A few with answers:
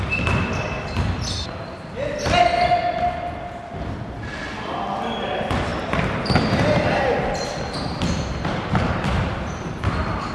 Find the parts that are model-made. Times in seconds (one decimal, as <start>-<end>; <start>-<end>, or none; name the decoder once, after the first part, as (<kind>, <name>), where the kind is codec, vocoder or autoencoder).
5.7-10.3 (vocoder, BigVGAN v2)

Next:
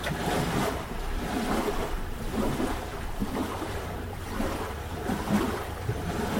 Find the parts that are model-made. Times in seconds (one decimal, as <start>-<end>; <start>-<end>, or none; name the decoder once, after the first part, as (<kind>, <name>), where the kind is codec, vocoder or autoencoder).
0.0-1.5 (vocoder, BigVGAN v2); 2.9-6.4

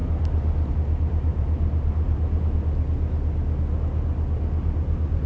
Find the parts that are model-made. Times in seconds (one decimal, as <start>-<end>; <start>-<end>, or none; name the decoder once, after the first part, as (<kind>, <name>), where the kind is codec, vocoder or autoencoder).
1.3-2.4 (vocoder, BigVGAN v2)

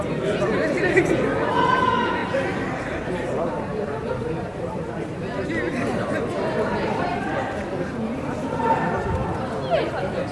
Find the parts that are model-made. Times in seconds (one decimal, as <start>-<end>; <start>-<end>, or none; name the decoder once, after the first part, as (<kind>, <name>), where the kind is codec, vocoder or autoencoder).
0.0-7.1 (vocoder, BigVGAN v2); 7.9-9.2; 9.8-10.3